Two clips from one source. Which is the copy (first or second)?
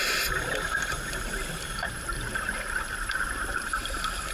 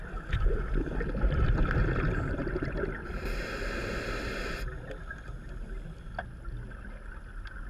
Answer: first